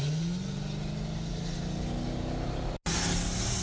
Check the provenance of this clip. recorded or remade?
recorded